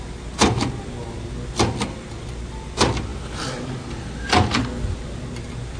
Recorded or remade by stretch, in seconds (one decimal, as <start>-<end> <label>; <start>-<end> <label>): 0.0-5.8 recorded